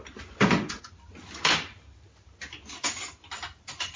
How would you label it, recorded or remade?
recorded